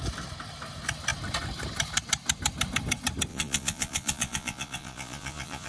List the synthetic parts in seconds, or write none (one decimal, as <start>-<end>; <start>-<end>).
3.3-5.7